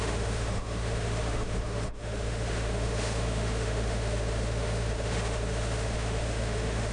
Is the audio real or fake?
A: fake